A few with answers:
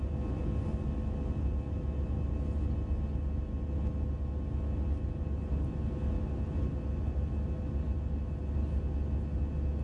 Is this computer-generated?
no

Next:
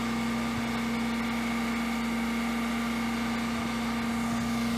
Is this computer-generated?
no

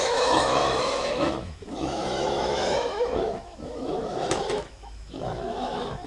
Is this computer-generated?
yes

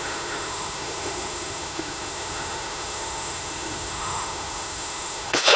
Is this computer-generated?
yes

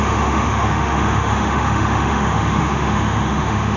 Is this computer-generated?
yes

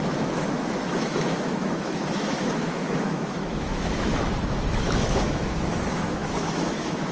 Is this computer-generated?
yes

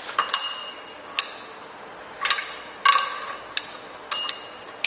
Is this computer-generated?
no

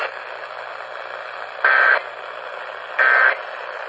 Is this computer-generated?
no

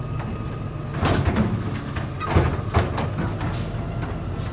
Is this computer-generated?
no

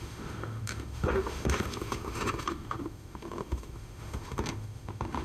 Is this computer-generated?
yes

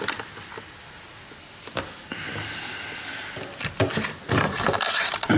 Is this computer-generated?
no